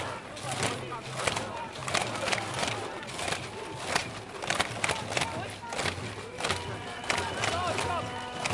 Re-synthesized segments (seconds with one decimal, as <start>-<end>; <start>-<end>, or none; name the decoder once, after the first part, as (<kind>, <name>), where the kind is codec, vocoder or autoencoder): none